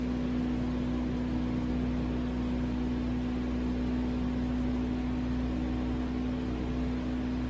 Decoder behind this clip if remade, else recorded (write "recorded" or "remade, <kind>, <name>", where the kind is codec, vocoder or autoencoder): recorded